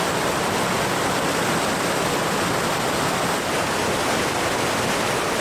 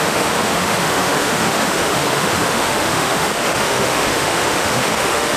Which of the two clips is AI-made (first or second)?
second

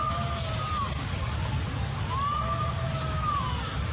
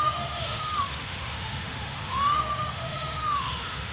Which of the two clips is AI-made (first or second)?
second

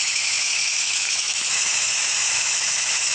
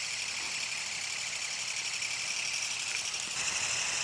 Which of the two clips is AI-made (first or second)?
first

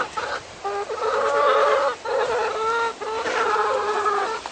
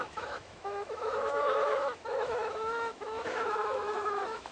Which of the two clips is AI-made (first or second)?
second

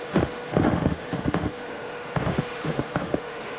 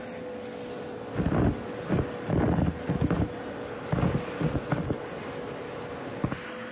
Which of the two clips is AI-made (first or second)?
first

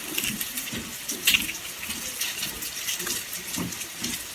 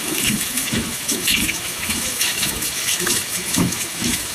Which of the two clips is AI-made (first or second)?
second